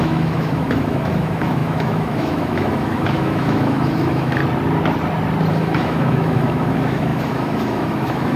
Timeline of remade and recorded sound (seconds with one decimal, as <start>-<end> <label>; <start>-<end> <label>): 0.0-4.4 remade; 4.4-5.5 recorded; 5.5-8.4 remade